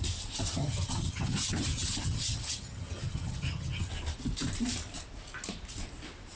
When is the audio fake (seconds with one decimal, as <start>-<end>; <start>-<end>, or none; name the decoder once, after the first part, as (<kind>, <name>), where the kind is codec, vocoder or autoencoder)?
0.6-3.9 (vocoder, HiFi-GAN)